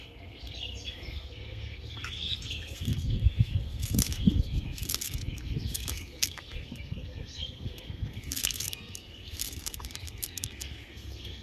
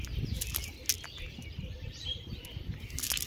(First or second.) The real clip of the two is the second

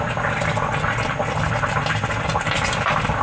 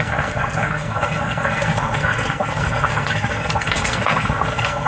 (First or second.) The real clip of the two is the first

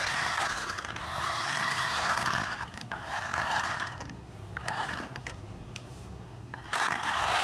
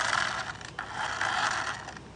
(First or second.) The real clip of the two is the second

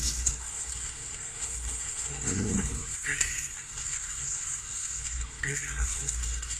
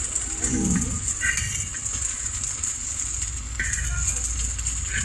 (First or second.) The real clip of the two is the second